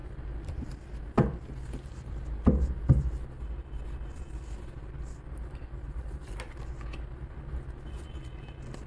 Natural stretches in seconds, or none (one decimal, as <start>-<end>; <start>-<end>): 0.7-5.8; 6.6-8.9